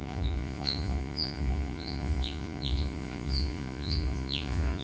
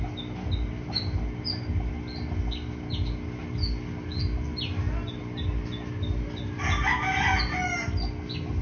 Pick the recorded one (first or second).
second